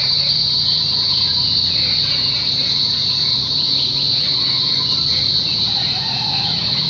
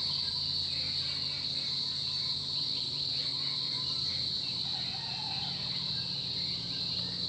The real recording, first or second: second